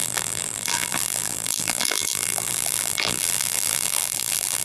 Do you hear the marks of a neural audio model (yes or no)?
yes